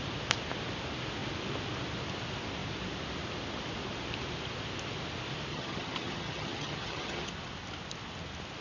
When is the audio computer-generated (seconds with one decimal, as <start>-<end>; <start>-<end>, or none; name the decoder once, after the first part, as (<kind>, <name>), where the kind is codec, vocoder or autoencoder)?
5.5-7.3 (vocoder, HiFi-GAN)